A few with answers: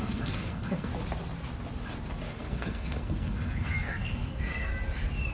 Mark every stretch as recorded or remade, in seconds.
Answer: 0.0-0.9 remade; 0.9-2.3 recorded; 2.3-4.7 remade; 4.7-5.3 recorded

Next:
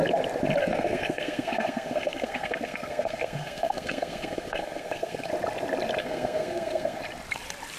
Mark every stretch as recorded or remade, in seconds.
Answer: 0.0-0.6 recorded; 0.6-5.3 remade; 5.3-6.0 recorded; 6.0-7.0 remade; 7.0-7.8 recorded

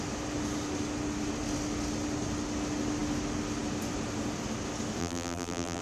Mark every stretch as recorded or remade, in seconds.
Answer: 0.0-5.0 recorded; 5.0-5.8 remade

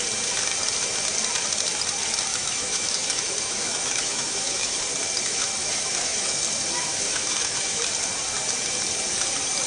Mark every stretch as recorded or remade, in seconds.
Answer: 0.0-2.3 recorded; 2.3-4.8 remade; 4.8-5.6 recorded; 5.6-6.4 remade; 6.4-6.9 recorded; 6.9-7.8 remade; 7.8-9.7 recorded